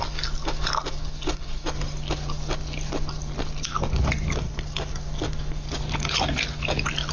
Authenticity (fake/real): real